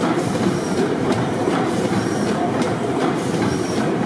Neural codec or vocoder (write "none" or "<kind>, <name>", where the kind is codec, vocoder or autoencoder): vocoder, BigVGAN v2